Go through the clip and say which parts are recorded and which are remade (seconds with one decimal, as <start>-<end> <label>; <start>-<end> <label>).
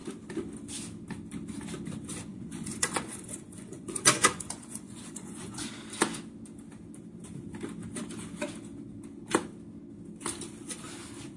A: 0.0-2.3 recorded; 2.3-5.7 remade; 5.7-11.4 recorded